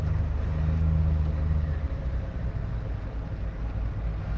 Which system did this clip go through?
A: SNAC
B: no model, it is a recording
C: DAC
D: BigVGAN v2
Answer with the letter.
B